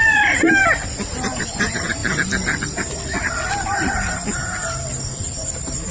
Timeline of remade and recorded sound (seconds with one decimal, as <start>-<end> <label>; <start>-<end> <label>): 0.0-0.6 remade; 0.6-1.1 recorded; 1.1-2.0 remade; 2.0-3.5 recorded; 3.5-4.4 remade; 4.4-5.2 recorded; 5.2-5.9 remade